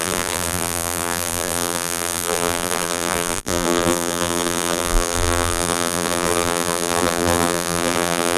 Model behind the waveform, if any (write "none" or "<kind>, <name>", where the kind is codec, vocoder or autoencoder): vocoder, BigVGAN v2